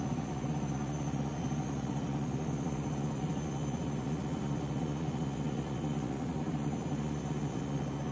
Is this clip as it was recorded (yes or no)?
no